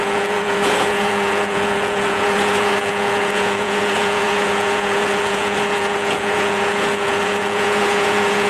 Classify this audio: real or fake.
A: fake